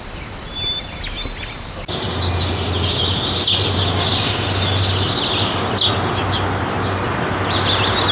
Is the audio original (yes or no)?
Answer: yes